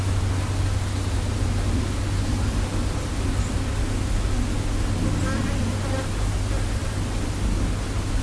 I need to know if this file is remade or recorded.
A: recorded